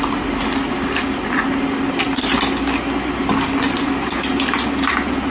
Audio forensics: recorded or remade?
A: recorded